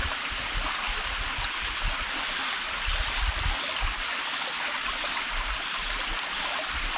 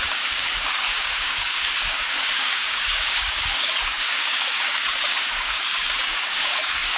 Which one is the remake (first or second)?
second